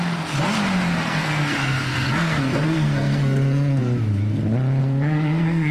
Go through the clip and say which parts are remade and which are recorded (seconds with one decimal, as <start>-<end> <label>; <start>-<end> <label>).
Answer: 0.0-0.9 recorded; 0.9-3.8 remade; 3.8-4.8 recorded; 4.8-5.7 remade